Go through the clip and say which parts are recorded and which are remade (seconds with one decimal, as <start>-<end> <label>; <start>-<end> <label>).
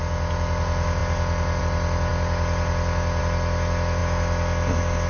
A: 0.0-5.1 recorded